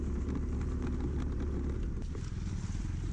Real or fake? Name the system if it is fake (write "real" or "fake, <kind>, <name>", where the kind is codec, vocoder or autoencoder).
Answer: real